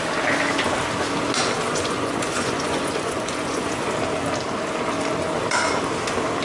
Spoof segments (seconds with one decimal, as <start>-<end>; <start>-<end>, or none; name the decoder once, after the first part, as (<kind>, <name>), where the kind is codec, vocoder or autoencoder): 1.7-3.9 (vocoder, Vocos)